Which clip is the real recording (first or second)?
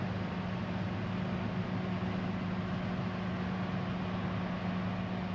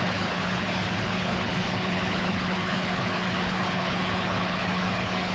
first